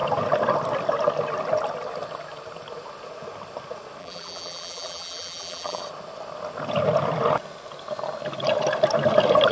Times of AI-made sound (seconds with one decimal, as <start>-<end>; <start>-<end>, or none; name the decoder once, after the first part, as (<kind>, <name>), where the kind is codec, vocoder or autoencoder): 4.0-5.8 (vocoder, BigVGAN v2)